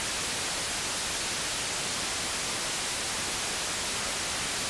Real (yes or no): yes